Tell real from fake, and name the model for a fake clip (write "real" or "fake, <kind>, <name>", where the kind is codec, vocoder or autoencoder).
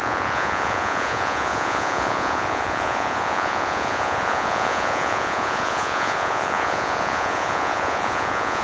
fake, vocoder, Vocos